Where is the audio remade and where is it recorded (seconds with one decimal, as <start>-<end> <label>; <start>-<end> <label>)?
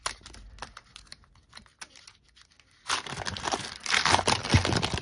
0.0-5.0 recorded